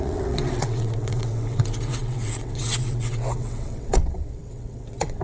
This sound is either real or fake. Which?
fake